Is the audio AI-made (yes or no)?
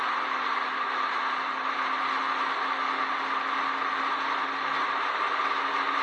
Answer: no